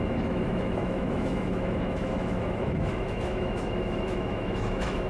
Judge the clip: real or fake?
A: fake